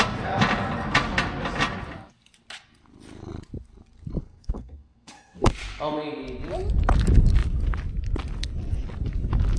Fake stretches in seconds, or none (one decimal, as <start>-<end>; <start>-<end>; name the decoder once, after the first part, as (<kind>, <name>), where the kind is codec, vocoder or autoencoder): 4.2-5.5 (codec, SNAC)